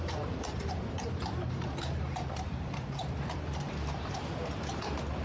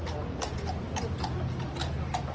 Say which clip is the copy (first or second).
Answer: first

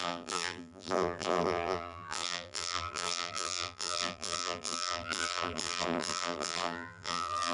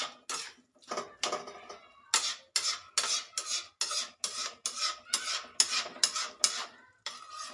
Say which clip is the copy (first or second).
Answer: first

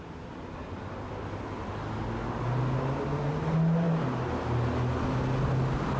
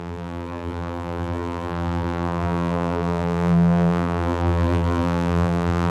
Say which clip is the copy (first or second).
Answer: second